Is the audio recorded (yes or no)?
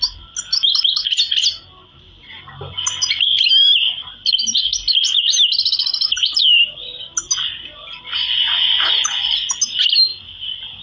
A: yes